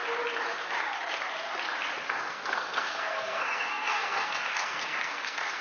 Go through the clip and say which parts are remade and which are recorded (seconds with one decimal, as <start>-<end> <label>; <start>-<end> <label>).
0.0-2.1 recorded; 2.1-5.6 remade